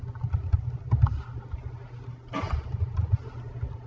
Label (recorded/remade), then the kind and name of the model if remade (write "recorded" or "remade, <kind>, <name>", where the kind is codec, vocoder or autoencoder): recorded